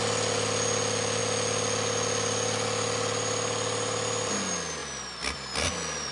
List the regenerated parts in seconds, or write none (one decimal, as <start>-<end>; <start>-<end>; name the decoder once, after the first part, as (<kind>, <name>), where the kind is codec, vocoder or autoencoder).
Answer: none

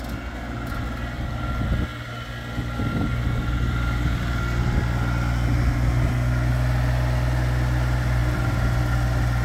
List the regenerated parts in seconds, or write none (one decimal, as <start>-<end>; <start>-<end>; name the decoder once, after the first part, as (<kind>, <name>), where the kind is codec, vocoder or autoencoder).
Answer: none

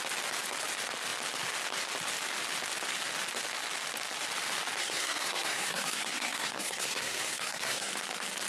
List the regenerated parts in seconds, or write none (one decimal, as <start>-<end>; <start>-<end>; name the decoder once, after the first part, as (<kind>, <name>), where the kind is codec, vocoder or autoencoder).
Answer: 4.8-7.9 (codec, SNAC)

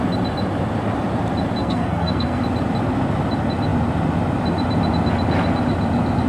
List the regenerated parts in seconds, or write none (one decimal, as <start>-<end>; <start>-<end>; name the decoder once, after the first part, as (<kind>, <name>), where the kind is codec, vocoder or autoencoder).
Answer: 1.6-2.4 (codec, SNAC)

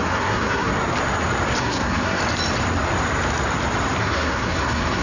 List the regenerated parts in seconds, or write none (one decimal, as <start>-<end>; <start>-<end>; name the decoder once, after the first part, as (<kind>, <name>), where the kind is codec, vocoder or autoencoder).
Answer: 0.0-0.7 (codec, SNAC); 1.6-2.2; 4.0-5.0

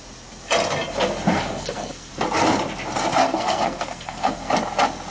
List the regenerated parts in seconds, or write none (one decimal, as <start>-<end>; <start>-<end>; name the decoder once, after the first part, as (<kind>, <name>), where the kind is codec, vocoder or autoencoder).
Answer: 1.3-2.1 (codec, SNAC); 3.2-4.5

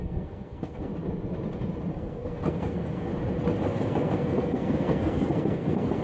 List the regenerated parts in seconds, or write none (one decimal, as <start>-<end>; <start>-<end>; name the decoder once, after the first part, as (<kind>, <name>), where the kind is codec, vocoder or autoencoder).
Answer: 0.0-0.9 (codec, SNAC); 1.9-3.1; 3.7-6.0

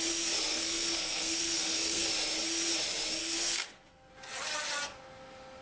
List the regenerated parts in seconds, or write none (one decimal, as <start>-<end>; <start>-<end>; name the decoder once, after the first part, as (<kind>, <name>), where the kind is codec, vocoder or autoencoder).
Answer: 0.5-2.1 (codec, SNAC); 3.2-4.1